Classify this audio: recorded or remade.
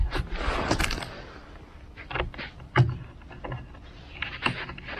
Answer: recorded